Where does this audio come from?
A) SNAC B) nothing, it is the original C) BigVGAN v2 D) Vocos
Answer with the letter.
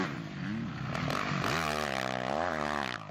B